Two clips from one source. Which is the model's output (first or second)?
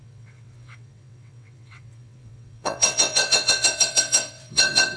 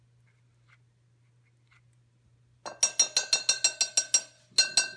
first